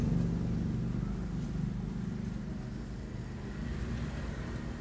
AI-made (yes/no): no